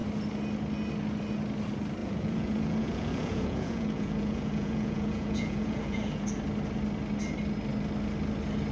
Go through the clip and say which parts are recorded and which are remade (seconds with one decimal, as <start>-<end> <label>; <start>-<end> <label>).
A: 0.0-2.0 recorded; 2.0-6.3 remade; 6.3-8.7 recorded